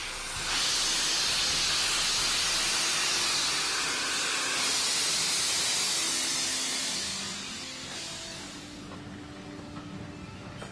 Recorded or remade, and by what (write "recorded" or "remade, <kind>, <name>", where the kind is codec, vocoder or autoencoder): recorded